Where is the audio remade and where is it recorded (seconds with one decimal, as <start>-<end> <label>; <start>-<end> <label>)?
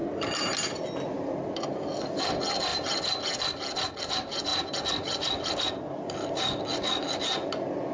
0.0-1.1 recorded; 1.1-2.7 remade; 2.7-4.0 recorded; 4.0-7.9 remade